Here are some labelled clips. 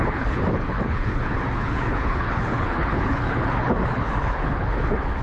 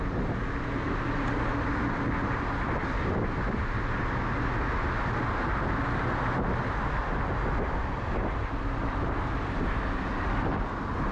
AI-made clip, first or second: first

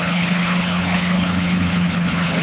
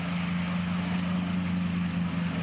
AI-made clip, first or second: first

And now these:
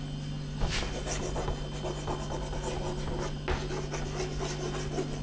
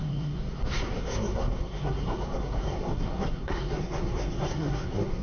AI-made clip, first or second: second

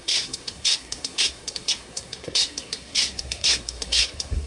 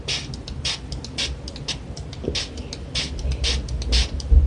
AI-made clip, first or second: first